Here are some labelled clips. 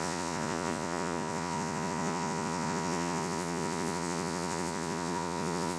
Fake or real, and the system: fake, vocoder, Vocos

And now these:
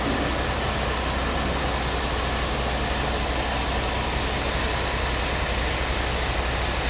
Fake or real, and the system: real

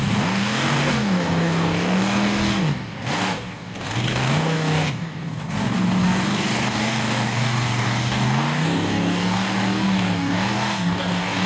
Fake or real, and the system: fake, codec, DAC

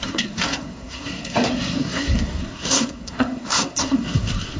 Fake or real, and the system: fake, codec, SNAC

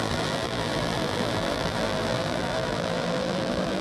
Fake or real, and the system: fake, vocoder, BigVGAN v2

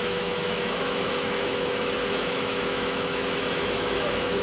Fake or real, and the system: fake, autoencoder, DAC-VAE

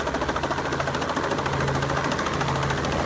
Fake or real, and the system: real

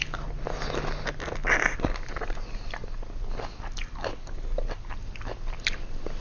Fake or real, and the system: real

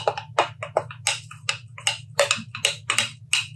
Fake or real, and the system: real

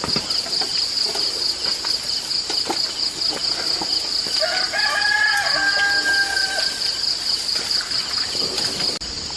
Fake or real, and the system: real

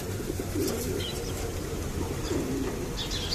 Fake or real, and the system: real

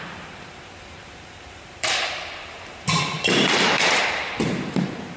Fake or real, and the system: fake, vocoder, BigVGAN v2